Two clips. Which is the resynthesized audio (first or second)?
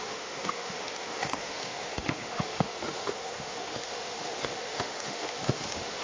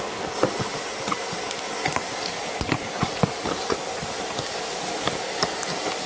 first